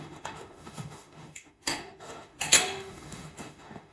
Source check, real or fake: fake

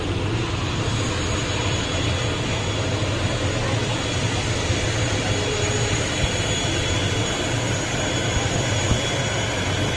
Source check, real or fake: real